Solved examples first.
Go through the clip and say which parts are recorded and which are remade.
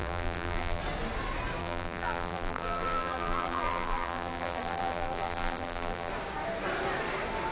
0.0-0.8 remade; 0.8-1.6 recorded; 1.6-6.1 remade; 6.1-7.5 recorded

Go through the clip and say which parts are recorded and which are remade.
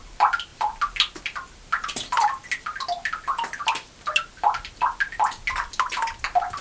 0.0-6.6 recorded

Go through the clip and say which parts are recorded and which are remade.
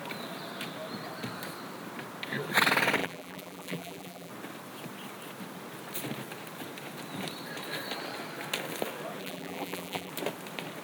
0.0-3.0 recorded; 3.0-4.3 remade; 4.3-9.2 recorded; 9.2-10.1 remade; 10.1-10.8 recorded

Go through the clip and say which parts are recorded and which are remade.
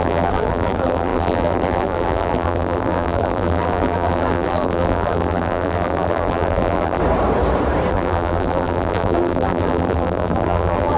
0.0-7.0 remade; 7.0-7.9 recorded; 7.9-11.0 remade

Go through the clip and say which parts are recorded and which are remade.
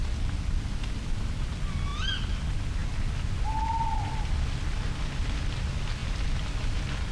0.0-1.9 recorded; 1.9-2.4 remade; 2.4-7.1 recorded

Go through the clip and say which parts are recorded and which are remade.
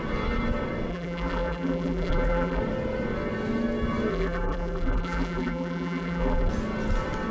0.0-0.9 recorded; 0.9-2.6 remade; 2.6-4.1 recorded; 4.1-6.5 remade; 6.5-7.3 recorded